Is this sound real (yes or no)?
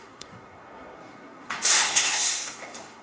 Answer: no